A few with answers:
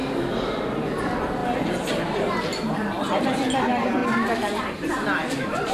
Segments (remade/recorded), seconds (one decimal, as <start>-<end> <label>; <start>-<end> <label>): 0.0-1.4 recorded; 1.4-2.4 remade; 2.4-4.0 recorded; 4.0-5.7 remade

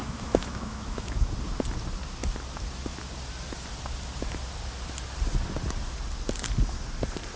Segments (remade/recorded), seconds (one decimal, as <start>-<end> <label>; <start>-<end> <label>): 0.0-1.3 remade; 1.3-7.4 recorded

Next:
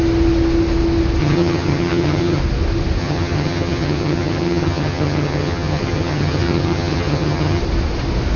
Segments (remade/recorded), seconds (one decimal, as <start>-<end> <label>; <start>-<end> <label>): 0.0-1.2 recorded; 1.2-2.4 remade; 2.4-3.0 recorded; 3.0-7.6 remade; 7.6-8.4 recorded